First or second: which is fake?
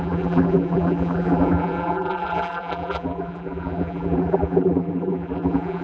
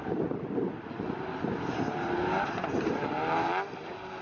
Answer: first